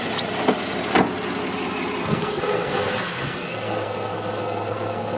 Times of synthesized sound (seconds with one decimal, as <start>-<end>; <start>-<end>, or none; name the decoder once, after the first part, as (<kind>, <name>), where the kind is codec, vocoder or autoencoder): 2.1-5.2 (codec, SNAC)